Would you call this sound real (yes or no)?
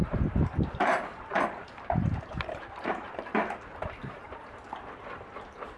no